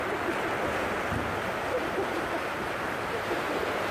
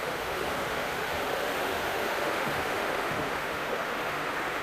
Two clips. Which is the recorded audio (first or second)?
first